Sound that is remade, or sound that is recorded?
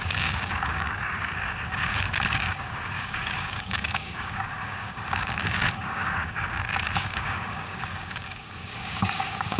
remade